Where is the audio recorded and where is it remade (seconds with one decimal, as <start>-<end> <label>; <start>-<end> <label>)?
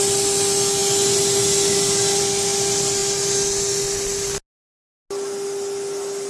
0.0-6.3 recorded